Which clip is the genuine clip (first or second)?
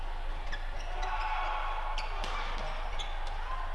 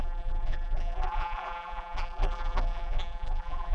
first